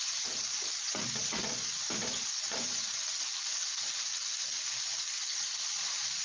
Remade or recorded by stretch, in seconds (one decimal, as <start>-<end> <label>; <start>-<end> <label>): 0.0-0.5 recorded; 0.5-3.0 remade; 3.0-5.3 recorded; 5.3-6.2 remade